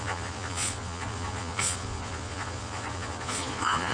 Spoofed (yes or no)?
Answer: yes